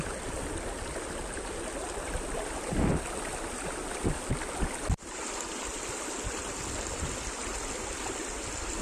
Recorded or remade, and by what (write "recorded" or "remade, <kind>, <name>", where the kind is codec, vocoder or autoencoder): recorded